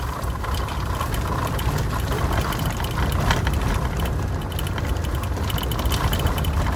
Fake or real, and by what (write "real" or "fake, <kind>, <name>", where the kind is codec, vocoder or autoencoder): real